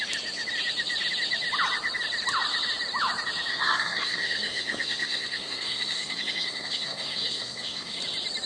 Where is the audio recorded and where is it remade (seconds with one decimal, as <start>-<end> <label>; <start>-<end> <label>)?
0.0-3.5 recorded; 3.5-8.0 remade; 8.0-8.5 recorded